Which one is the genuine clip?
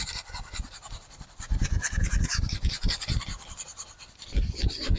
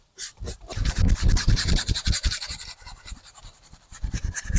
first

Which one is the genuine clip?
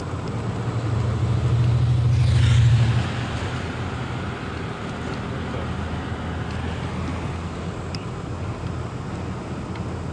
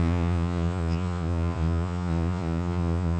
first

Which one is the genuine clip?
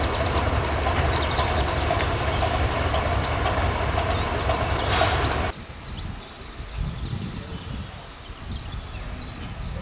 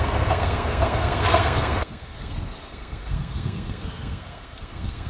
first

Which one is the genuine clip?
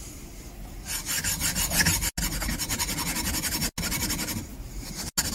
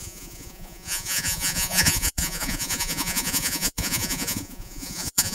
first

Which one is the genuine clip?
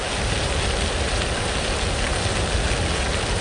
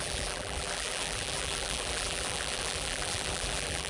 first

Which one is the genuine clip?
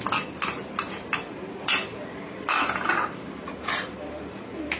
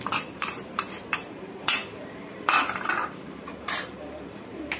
first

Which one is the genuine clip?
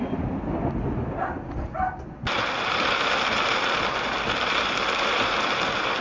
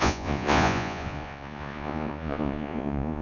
first